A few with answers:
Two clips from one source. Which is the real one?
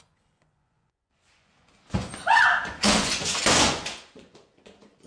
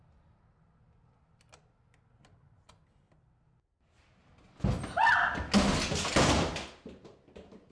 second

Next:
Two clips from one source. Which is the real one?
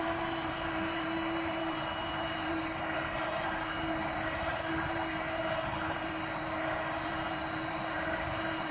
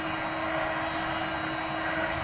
second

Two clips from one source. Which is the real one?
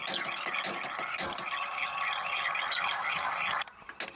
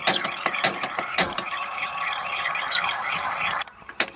first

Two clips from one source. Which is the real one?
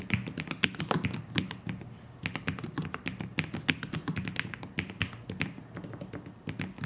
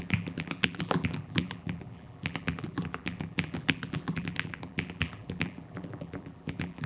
first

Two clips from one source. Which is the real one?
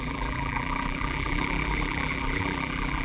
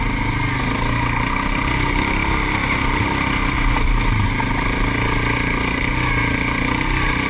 second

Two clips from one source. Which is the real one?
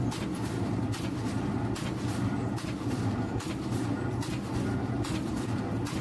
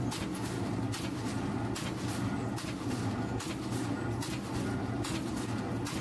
second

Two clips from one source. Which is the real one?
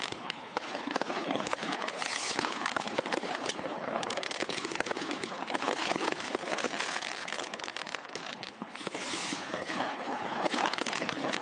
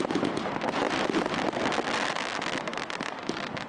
second